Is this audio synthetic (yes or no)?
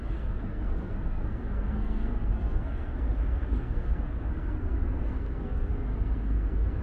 yes